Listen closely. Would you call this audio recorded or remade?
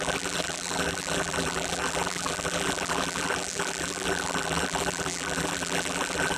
remade